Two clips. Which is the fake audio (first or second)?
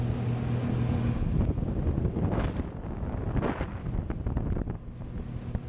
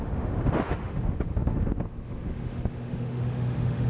second